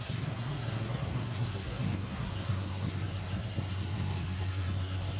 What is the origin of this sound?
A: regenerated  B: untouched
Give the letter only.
A